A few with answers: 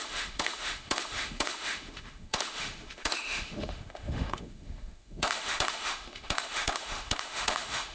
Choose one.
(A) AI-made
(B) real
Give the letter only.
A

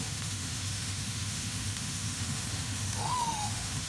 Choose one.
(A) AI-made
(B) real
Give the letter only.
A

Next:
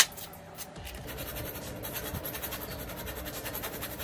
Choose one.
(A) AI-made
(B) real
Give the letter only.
B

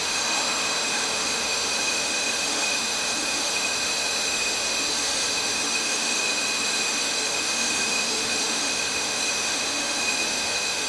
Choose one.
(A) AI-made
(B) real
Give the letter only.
A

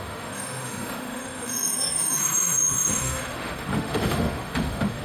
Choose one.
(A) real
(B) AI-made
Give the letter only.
B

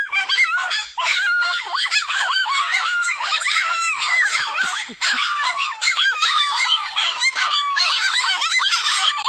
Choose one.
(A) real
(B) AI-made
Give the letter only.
B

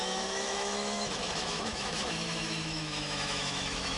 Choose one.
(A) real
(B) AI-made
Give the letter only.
B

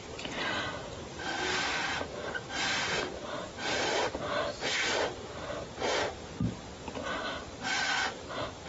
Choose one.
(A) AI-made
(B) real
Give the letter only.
B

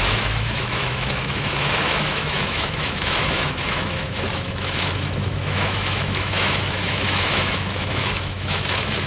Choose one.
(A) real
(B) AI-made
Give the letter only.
B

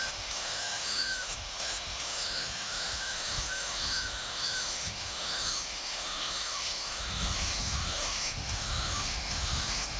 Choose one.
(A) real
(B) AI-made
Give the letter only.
B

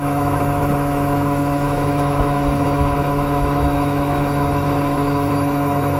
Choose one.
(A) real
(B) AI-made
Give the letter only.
B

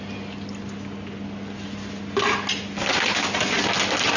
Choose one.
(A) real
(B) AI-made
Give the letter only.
A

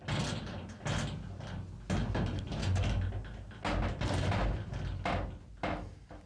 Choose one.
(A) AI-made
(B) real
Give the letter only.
B